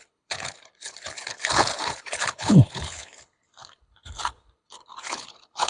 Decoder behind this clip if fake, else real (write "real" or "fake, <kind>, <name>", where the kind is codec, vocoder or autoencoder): fake, codec, HILCodec